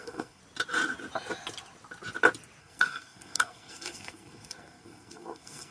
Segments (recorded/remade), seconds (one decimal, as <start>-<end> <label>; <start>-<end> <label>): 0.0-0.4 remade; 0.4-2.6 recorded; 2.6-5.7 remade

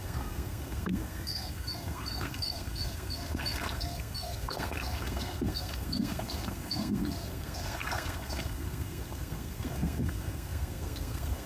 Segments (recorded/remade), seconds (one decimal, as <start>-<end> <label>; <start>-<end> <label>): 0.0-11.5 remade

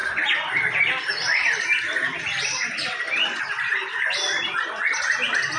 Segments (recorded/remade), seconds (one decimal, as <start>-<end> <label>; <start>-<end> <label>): 0.0-5.6 recorded